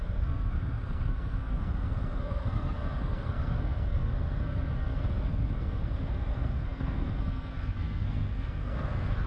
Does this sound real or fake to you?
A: fake